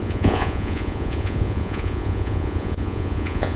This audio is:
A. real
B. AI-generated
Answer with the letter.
B